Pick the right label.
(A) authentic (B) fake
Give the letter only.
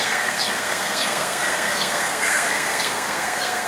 B